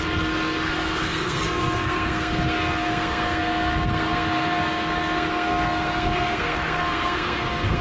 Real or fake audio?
fake